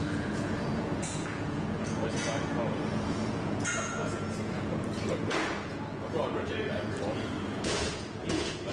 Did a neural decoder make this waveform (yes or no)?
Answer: yes